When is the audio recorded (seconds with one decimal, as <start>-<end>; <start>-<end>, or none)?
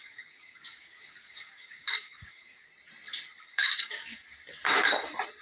2.7-3.4; 4.2-5.4